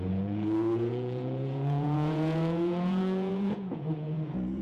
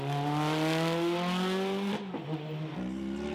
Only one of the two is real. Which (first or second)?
second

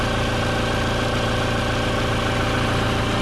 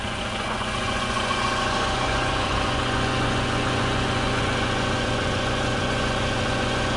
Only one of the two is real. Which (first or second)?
first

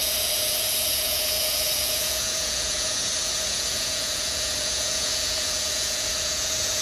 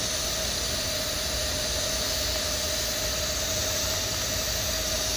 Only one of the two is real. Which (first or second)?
second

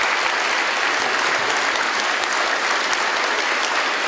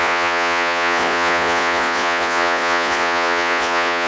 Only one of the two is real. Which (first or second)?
first